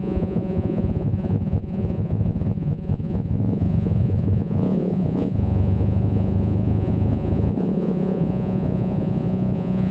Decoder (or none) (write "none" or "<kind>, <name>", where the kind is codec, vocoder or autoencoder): vocoder, Vocos